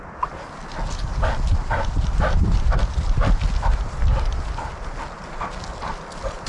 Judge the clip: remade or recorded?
recorded